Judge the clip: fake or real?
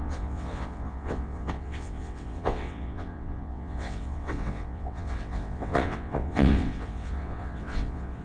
fake